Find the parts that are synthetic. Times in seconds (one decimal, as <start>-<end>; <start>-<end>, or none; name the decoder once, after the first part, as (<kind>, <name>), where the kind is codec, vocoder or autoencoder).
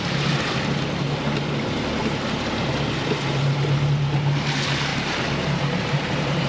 2.0-2.7 (vocoder, BigVGAN v2); 4.9-6.5